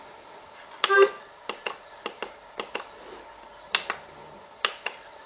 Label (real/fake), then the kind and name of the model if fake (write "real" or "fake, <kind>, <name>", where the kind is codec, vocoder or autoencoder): real